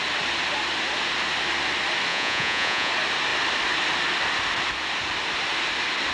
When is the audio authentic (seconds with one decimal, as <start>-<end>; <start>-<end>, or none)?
0.0-2.1; 2.9-6.1